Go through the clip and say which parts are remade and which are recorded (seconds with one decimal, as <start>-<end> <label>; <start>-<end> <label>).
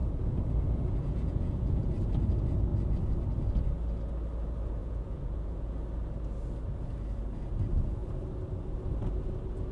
0.0-1.9 remade; 1.9-4.8 recorded; 4.8-5.7 remade; 5.7-9.7 recorded